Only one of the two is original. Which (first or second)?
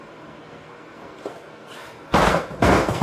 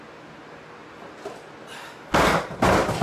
second